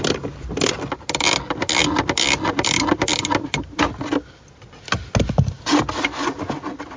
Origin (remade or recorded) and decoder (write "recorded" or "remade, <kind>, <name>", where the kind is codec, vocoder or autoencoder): recorded